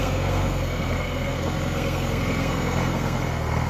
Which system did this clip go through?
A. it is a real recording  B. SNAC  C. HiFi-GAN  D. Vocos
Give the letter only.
B